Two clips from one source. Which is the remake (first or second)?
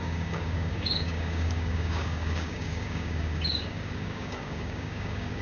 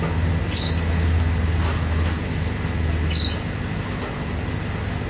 first